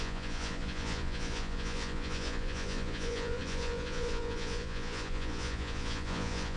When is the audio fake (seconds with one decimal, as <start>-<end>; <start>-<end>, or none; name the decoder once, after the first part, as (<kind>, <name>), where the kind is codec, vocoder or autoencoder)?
0.0-6.6 (vocoder, Vocos)